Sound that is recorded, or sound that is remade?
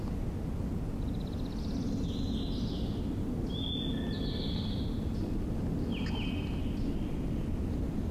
recorded